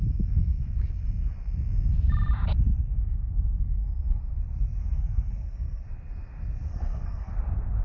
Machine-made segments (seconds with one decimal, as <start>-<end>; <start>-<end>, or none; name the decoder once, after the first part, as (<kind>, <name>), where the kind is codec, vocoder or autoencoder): 2.9-4.2 (codec, SNAC); 4.8-5.8; 6.7-7.3